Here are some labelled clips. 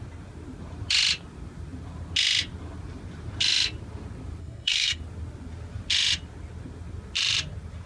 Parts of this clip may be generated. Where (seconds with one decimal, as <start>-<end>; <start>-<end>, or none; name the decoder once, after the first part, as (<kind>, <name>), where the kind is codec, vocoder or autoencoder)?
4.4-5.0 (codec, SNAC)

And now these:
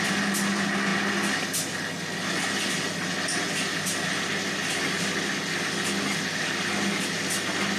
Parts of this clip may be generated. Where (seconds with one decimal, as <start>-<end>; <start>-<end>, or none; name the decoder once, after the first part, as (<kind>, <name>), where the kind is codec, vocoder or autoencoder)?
none

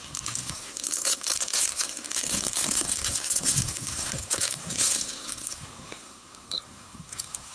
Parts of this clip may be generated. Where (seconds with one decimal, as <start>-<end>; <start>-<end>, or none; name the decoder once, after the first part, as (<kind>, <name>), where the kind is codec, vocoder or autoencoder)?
0.0-7.5 (codec, SNAC)